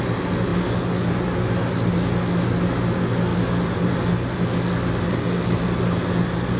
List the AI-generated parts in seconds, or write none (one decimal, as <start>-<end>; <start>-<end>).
none